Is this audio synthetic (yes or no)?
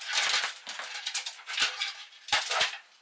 no